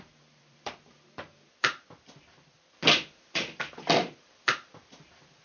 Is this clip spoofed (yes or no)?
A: yes